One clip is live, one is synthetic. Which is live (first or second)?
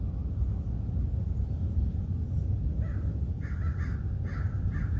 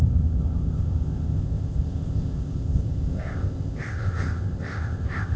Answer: first